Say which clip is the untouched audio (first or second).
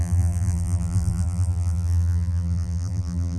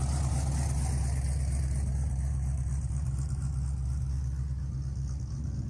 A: second